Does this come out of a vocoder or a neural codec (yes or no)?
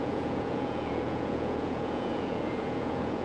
yes